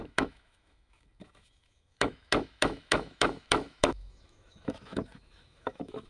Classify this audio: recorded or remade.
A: remade